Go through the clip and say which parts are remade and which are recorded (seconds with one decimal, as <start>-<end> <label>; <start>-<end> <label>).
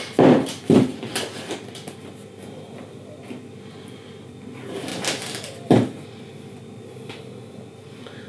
0.0-4.9 remade; 4.9-8.3 recorded